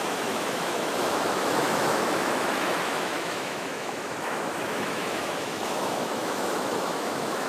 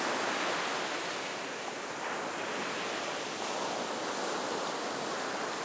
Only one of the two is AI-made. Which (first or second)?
first